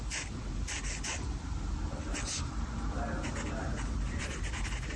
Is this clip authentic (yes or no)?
yes